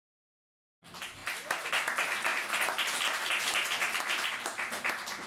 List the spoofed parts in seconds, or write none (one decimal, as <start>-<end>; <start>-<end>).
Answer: none